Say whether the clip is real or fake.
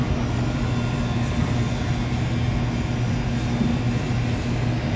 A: real